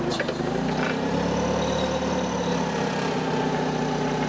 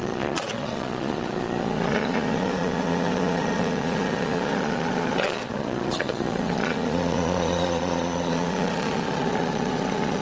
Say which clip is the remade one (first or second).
second